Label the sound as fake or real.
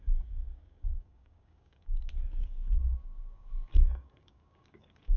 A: fake